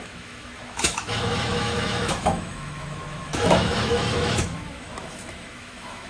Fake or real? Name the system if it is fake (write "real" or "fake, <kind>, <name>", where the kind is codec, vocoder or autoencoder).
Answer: fake, autoencoder, DAC-VAE